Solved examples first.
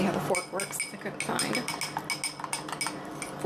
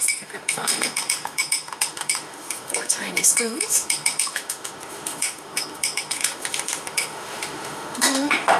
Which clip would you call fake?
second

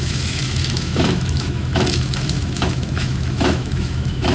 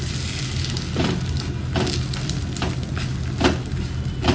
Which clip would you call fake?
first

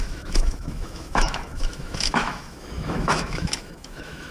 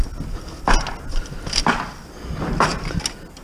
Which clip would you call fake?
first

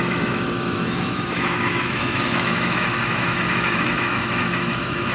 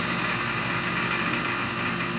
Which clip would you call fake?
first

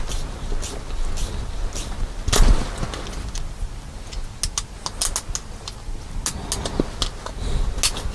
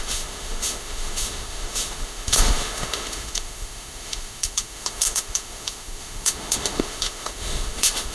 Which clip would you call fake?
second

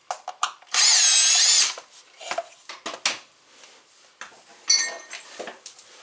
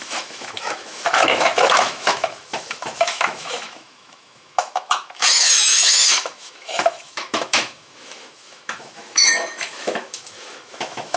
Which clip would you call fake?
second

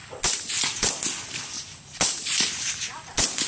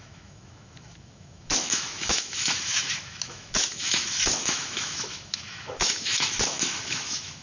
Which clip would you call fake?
second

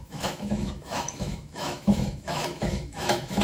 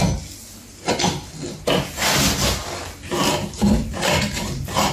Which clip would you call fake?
first